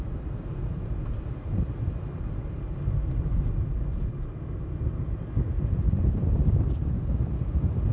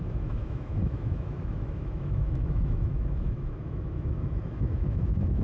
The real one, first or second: first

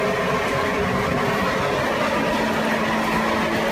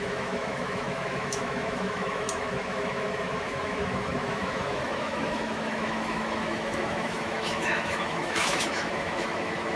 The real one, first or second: first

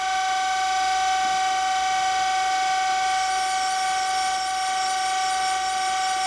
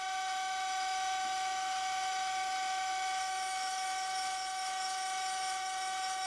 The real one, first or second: first